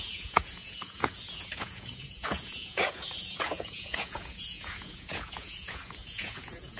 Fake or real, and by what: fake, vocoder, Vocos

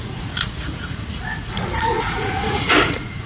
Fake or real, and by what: fake, vocoder, Vocos